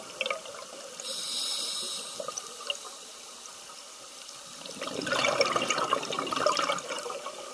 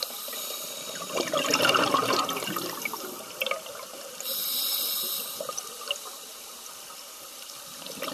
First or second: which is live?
first